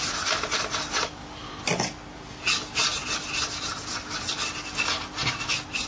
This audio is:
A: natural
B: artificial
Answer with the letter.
A